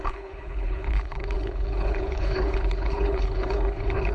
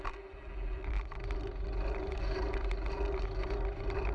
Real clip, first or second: second